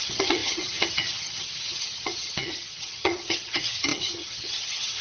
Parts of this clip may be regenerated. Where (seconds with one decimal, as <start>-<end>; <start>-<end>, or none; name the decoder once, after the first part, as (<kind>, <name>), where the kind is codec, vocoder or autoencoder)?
0.0-5.0 (vocoder, HiFi-GAN)